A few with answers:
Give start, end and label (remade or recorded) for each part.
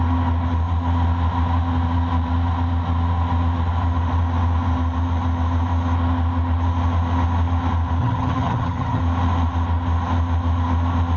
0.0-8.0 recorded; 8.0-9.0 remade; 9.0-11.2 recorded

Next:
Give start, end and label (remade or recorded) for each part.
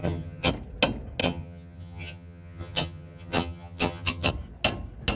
0.0-0.5 remade; 0.5-1.2 recorded; 1.2-4.3 remade; 4.3-5.2 recorded